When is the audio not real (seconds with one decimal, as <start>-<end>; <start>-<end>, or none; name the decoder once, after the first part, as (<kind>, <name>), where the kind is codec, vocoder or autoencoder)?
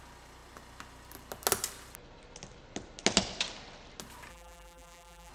4.3-5.3 (vocoder, BigVGAN v2)